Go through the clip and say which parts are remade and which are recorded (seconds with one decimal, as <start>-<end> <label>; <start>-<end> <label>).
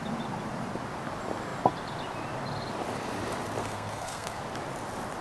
0.0-3.6 recorded; 3.6-4.4 remade; 4.4-5.2 recorded